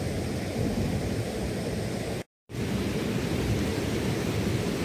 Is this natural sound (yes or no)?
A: yes